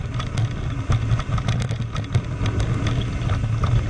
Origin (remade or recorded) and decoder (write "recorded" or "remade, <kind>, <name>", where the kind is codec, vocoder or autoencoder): recorded